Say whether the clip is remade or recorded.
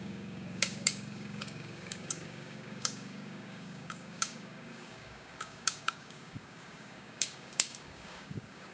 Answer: remade